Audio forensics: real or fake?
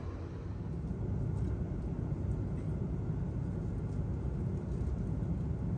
real